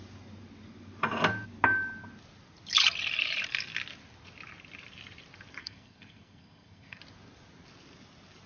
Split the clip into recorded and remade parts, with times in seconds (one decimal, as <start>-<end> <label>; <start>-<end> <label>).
0.0-5.6 recorded; 5.6-7.0 remade; 7.0-8.5 recorded